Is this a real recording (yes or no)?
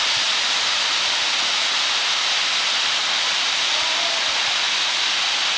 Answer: yes